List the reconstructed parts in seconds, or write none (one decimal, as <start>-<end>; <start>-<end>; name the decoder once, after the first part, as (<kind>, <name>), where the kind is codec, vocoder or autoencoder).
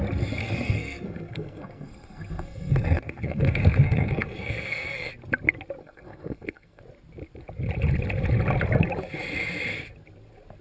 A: 0.4-5.1 (codec, SNAC); 5.8-6.8